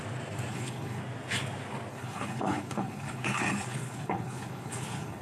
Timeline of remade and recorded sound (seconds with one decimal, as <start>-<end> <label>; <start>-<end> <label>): 0.0-0.5 recorded; 0.5-1.0 remade; 1.0-1.9 recorded; 1.9-5.2 remade